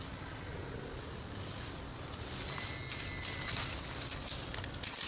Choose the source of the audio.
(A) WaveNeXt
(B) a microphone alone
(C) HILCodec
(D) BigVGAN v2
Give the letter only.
B